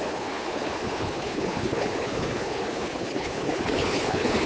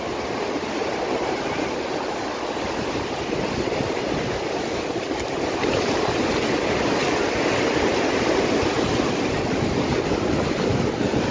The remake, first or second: first